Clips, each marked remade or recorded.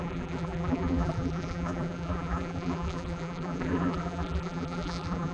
remade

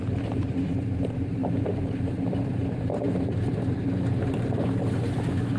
remade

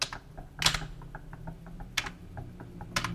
recorded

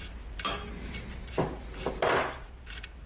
recorded